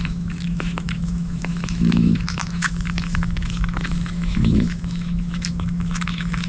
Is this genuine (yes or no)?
no